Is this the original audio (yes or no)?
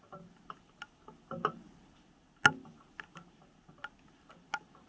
yes